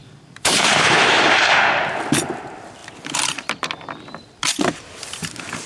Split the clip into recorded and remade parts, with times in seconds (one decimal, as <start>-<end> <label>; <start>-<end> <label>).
0.0-2.4 remade; 2.4-2.8 recorded; 2.8-5.7 remade